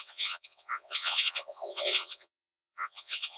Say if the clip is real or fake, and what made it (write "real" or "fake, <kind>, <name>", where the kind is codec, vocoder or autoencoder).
fake, vocoder, WaveNeXt